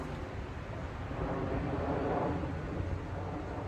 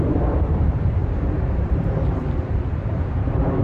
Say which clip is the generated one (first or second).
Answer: second